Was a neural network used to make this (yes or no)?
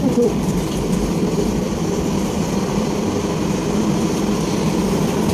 yes